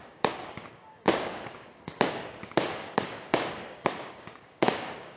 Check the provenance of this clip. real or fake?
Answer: fake